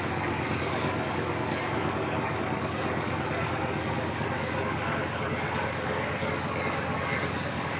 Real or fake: fake